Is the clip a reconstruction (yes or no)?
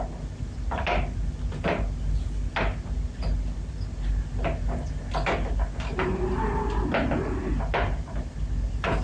no